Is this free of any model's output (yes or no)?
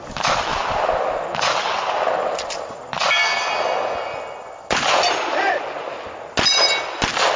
yes